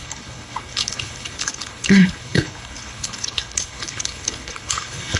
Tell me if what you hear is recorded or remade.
remade